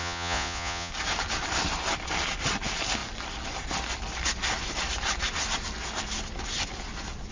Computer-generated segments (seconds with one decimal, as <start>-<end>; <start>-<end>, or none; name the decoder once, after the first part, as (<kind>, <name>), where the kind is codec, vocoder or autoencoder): 0.0-0.9 (vocoder, Vocos)

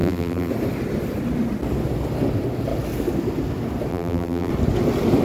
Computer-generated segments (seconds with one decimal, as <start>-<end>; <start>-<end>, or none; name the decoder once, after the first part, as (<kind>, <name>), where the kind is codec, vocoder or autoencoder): 0.0-0.5 (vocoder, BigVGAN v2); 3.9-4.5

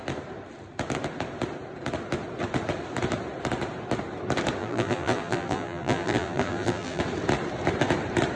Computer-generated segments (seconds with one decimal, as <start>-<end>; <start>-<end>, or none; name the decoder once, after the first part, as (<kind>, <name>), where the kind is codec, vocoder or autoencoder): 4.6-7.0 (vocoder, BigVGAN v2)

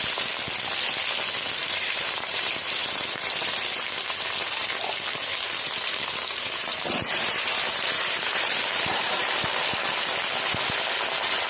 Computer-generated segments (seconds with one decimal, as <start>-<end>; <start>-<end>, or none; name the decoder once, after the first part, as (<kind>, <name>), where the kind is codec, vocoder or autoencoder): 1.6-3.2 (vocoder, BigVGAN v2); 5.3-9.8